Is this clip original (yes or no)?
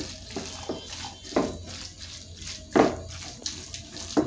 yes